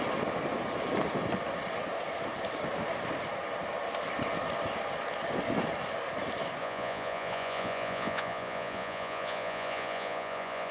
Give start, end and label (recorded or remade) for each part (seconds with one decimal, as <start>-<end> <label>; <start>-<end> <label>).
0.0-6.6 recorded; 6.6-10.7 remade